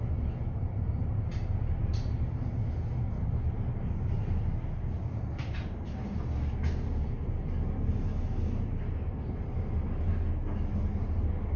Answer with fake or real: real